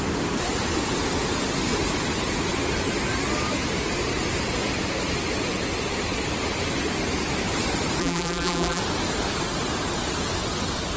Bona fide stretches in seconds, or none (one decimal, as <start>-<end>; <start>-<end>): 0.0-8.0; 8.8-11.0